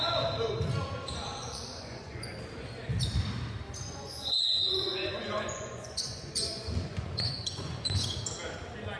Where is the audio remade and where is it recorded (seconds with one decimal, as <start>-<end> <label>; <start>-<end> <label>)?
0.0-1.4 recorded; 1.4-2.3 remade; 2.3-3.8 recorded; 3.8-8.2 remade; 8.2-9.0 recorded